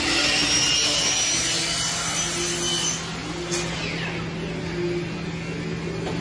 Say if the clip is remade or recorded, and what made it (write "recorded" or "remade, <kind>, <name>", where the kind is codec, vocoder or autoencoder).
recorded